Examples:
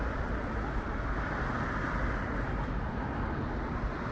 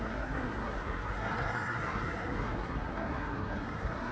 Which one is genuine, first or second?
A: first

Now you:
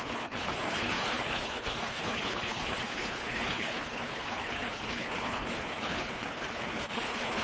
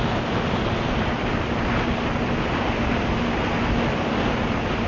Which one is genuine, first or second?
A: second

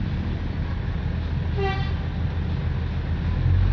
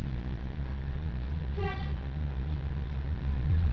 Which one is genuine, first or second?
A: first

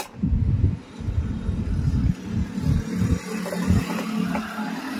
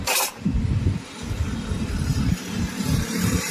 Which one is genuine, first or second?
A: first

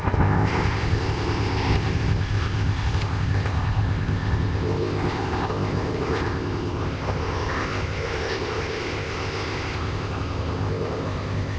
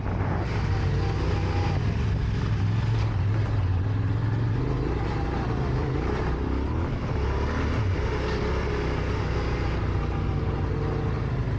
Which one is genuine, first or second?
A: second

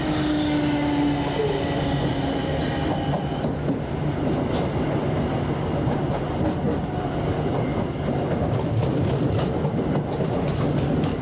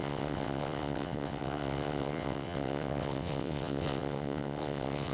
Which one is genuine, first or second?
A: first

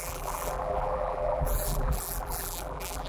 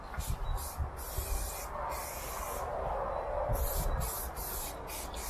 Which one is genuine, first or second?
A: second